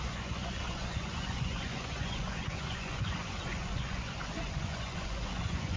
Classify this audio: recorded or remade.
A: remade